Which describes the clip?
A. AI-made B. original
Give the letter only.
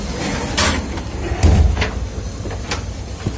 A